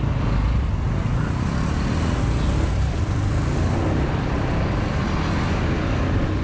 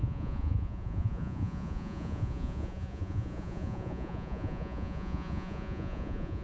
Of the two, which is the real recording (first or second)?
first